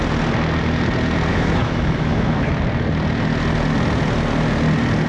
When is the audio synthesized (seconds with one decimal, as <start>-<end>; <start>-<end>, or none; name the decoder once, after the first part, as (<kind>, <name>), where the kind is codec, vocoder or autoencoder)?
1.3-2.5 (autoencoder, DAC-VAE)